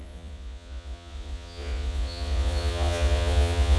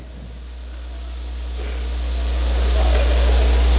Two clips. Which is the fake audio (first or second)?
first